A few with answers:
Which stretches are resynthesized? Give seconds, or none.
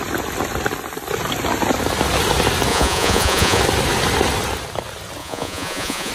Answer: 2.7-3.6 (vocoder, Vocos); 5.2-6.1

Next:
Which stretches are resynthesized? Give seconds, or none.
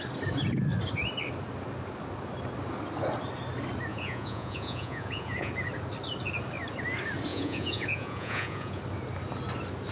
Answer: 3.9-5.5 (vocoder, Vocos); 7.3-8.8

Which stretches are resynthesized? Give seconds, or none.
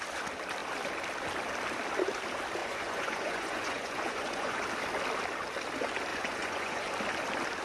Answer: 2.6-4.6 (vocoder, Vocos); 6.1-6.9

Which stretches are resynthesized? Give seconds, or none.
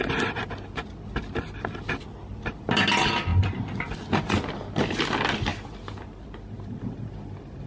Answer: none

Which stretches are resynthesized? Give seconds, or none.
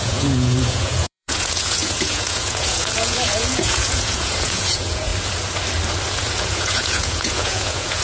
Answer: 0.0-5.1 (vocoder, Vocos); 6.1-8.0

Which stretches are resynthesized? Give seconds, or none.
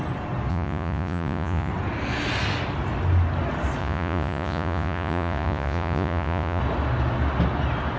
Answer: 0.5-1.7 (vocoder, Vocos); 3.8-6.6